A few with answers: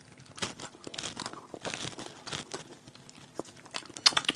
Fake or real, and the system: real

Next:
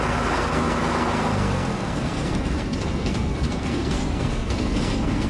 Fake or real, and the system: fake, codec, SNAC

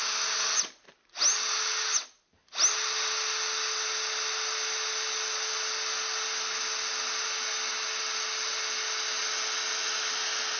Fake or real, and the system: real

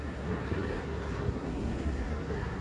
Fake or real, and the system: fake, codec, SNAC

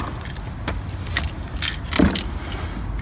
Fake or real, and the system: real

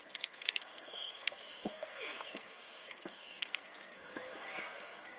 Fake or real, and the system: fake, codec, SNAC